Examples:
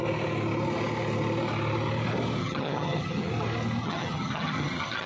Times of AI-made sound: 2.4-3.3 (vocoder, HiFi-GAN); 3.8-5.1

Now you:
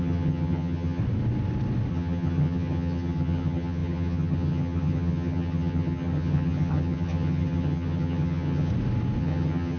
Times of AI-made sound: 0.0-1.0 (vocoder, HiFi-GAN); 1.9-8.7; 9.2-9.8

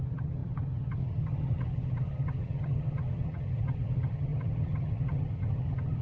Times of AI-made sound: 0.0-6.0 (vocoder, HiFi-GAN)

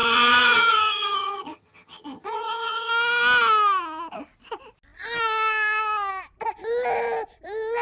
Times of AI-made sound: 0.0-2.9 (vocoder, HiFi-GAN)

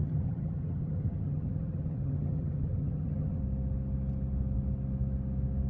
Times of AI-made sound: 0.0-3.4 (vocoder, HiFi-GAN)

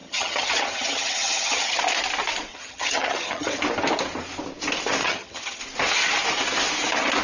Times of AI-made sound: 0.0-1.8 (vocoder, HiFi-GAN); 2.5-3.6; 5.0-5.6

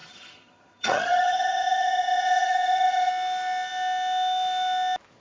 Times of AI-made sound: 0.0-3.1 (vocoder, HiFi-GAN)

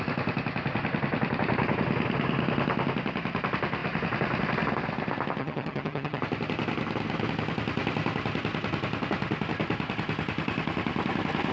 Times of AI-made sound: 5.4-6.2 (vocoder, HiFi-GAN)